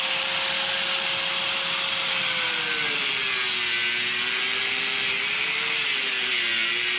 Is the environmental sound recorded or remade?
recorded